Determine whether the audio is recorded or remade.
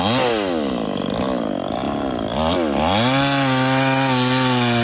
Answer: recorded